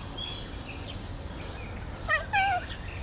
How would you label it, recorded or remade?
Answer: recorded